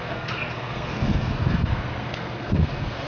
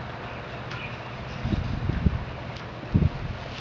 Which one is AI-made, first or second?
first